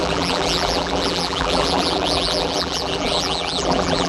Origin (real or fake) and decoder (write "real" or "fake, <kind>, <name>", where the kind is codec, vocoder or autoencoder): fake, vocoder, BigVGAN v2